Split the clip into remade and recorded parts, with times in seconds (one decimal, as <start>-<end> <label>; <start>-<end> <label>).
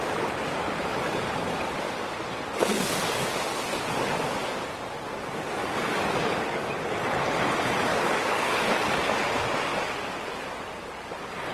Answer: 0.0-2.7 recorded; 2.7-3.3 remade; 3.3-5.6 recorded; 5.6-6.7 remade; 6.7-7.9 recorded; 7.9-8.7 remade; 8.7-11.5 recorded